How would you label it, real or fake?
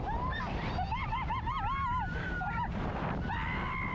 real